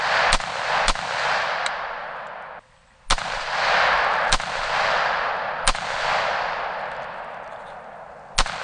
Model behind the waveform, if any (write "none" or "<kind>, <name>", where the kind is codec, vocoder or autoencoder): none